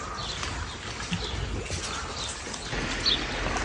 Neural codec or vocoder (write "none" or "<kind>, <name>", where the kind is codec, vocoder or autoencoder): none